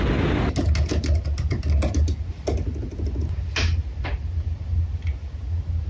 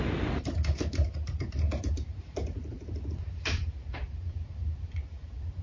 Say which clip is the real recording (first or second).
first